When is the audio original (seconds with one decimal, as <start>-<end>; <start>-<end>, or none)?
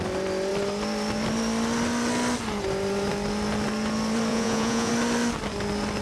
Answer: 0.0-4.3; 4.9-6.0